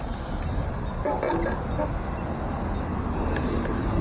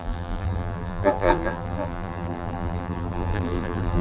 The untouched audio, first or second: first